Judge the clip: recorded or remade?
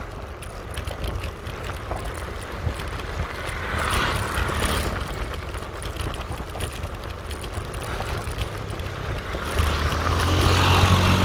recorded